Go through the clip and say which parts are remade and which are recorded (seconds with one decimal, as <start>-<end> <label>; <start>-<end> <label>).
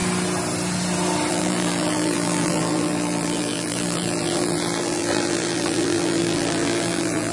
0.0-1.3 recorded; 1.3-7.3 remade